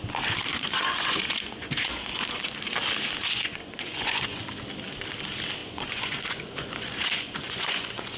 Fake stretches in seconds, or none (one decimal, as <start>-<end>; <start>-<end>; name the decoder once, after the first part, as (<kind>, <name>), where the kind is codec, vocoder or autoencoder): 0.5-2.4 (vocoder, Vocos); 3.2-4.4; 5.6-8.2